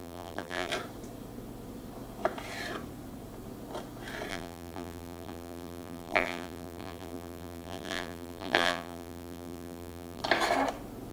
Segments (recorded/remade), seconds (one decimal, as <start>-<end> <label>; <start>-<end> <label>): 0.0-0.7 remade; 0.7-4.3 recorded; 4.3-10.2 remade; 10.2-11.1 recorded